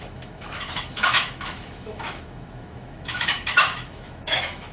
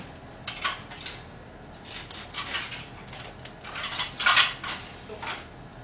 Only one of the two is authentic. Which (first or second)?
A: second